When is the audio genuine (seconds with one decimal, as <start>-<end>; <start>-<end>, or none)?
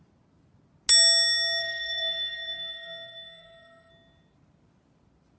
0.0-1.6; 3.9-5.4